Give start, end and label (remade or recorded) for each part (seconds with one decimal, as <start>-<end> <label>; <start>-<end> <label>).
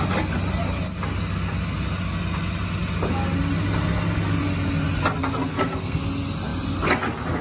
0.0-5.5 recorded; 5.5-6.0 remade; 6.0-7.4 recorded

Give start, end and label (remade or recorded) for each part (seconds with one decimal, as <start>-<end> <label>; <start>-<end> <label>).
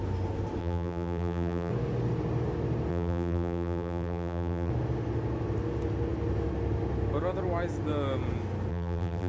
0.0-0.6 recorded; 0.6-1.7 remade; 1.7-2.9 recorded; 2.9-4.7 remade; 4.7-8.7 recorded; 8.7-9.3 remade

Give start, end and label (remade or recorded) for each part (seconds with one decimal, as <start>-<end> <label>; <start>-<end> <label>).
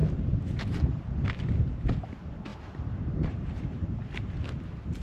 0.0-0.6 remade; 0.6-2.5 recorded; 2.5-4.4 remade; 4.4-5.0 recorded